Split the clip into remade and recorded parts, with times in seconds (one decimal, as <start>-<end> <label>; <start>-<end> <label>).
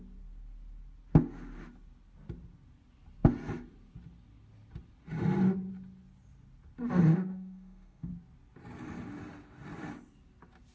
0.0-7.1 recorded; 7.1-8.1 remade; 8.1-10.7 recorded